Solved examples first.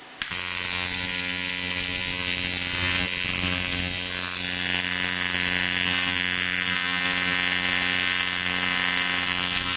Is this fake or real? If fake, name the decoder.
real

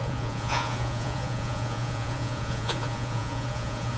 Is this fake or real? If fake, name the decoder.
fake, vocoder, Vocos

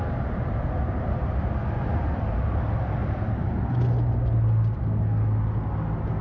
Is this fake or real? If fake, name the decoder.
real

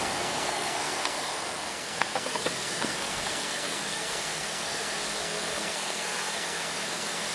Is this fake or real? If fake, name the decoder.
fake, codec, SNAC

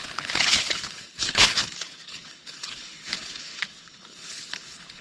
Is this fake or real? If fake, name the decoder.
fake, codec, HILCodec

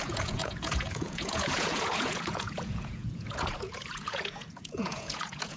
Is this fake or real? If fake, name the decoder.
fake, vocoder, Vocos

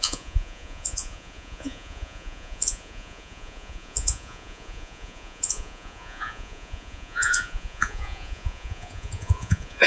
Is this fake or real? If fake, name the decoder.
fake, vocoder, Vocos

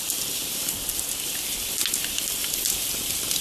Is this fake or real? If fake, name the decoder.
real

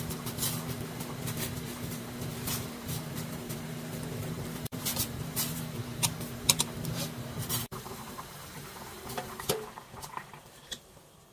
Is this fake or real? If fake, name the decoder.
fake, vocoder, BigVGAN v2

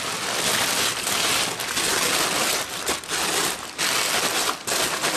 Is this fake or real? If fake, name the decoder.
real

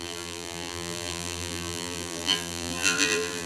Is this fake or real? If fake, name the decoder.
fake, vocoder, BigVGAN v2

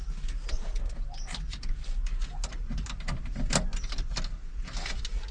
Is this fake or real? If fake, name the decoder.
real